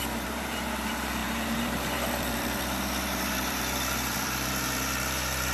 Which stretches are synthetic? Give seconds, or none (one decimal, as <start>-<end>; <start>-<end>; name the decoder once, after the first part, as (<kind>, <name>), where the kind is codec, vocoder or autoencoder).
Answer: 0.0-5.5 (vocoder, BigVGAN v2)